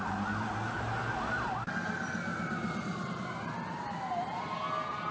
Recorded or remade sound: recorded